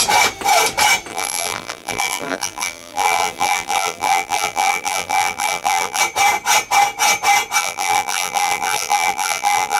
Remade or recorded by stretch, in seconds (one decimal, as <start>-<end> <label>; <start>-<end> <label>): 0.0-1.1 recorded; 1.1-6.0 remade; 6.0-7.6 recorded; 7.6-9.8 remade